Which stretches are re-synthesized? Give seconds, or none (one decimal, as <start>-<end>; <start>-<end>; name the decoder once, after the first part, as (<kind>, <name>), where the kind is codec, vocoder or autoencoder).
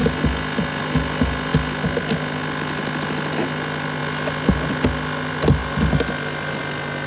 none